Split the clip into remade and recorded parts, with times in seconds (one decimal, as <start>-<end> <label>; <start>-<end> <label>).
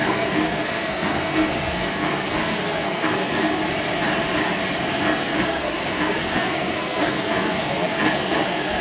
0.0-3.6 remade; 3.6-4.9 recorded; 4.9-8.8 remade